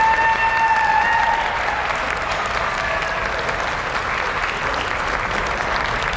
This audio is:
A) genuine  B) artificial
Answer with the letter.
A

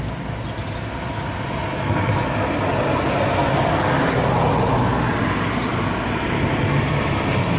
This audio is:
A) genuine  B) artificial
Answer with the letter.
A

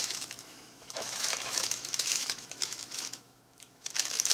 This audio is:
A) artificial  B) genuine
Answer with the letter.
A